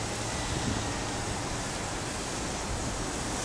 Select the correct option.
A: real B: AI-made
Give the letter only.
A